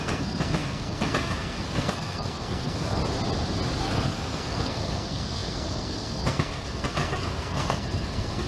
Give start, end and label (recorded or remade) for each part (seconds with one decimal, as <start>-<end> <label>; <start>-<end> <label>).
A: 0.0-3.0 remade; 3.0-3.8 recorded; 3.8-8.5 remade